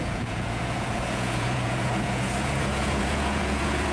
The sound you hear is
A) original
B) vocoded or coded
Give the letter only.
B